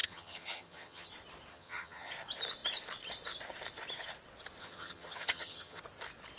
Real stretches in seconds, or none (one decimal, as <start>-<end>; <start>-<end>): 1.1-1.5; 2.1-4.6; 5.8-6.4